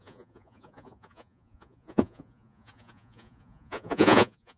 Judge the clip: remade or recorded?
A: remade